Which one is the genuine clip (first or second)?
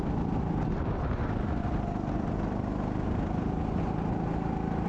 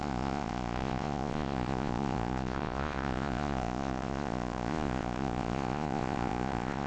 first